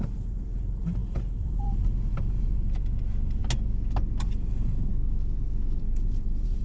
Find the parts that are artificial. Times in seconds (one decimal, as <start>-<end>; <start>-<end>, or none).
0.0-3.4; 4.2-4.9; 5.8-6.6